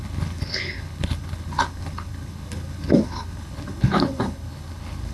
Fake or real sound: fake